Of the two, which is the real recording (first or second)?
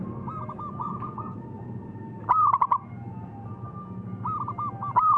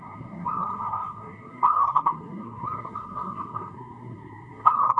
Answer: first